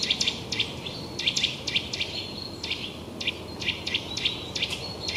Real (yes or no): yes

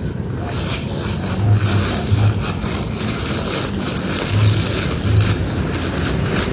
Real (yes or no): yes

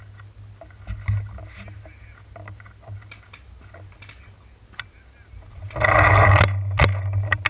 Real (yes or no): yes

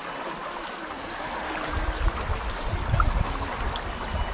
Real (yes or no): yes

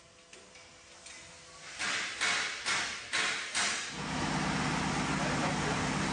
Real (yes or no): yes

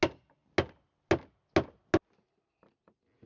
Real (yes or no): yes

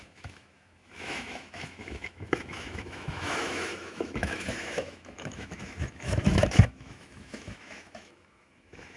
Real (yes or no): no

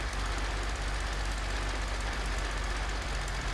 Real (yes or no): yes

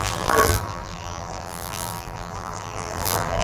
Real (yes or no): no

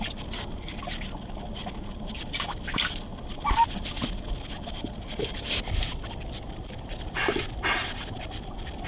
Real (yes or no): yes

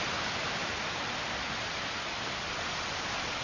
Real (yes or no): no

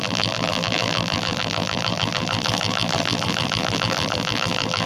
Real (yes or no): no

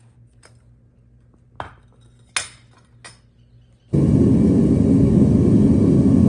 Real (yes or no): yes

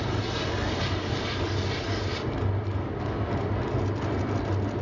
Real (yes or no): yes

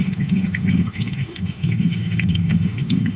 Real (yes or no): no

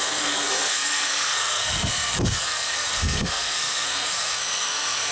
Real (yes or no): no